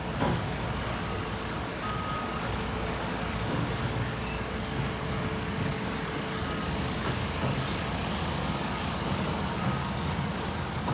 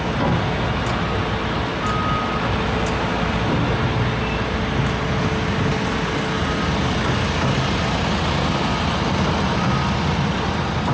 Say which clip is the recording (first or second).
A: second